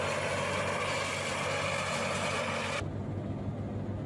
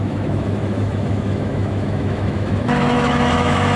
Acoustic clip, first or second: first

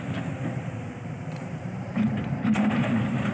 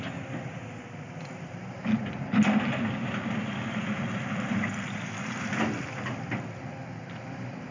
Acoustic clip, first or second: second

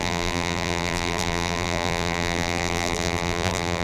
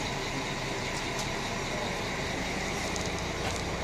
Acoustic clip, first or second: second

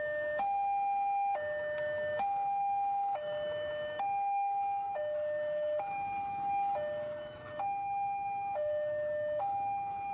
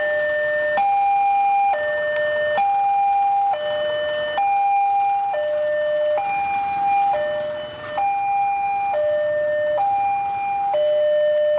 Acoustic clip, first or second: second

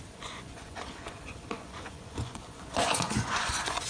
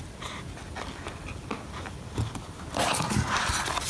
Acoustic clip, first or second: second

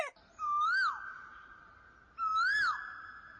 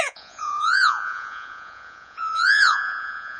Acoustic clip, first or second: first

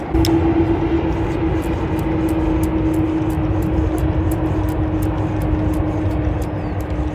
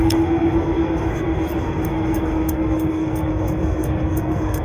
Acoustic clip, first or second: first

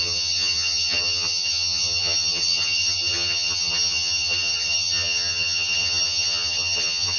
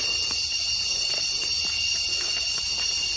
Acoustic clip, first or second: second